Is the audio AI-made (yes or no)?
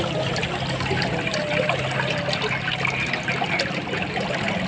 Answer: no